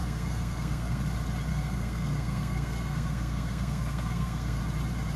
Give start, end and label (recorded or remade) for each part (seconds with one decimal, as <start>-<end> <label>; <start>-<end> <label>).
0.0-1.0 remade; 1.0-1.5 recorded; 1.5-4.6 remade; 4.6-5.2 recorded